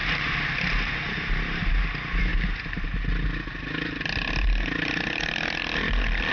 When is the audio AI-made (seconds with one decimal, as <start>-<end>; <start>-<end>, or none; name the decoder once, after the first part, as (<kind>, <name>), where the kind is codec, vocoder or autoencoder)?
0.0-1.7 (vocoder, BigVGAN v2)